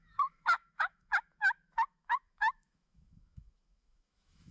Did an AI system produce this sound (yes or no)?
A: yes